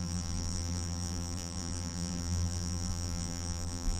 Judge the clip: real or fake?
fake